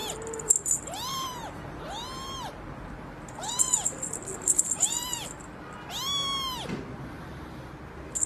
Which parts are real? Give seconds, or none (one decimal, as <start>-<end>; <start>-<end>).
0.0-8.3